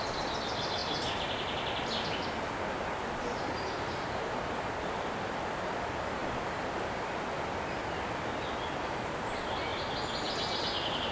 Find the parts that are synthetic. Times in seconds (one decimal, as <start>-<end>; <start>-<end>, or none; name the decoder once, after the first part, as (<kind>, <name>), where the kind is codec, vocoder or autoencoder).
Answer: none

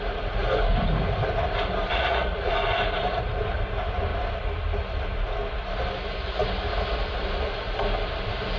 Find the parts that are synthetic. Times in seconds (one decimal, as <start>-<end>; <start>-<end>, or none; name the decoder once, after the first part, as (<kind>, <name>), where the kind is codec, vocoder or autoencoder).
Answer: 1.9-2.5 (vocoder, Vocos)